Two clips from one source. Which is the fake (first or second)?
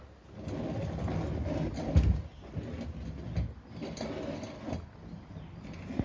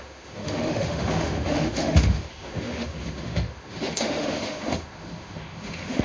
second